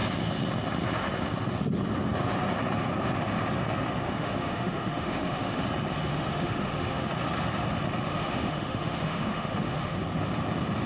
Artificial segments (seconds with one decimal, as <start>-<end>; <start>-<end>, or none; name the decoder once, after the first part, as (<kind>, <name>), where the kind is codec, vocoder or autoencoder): 4.0-5.6 (autoencoder, DAC-VAE); 6.1-7.1; 8.1-10.0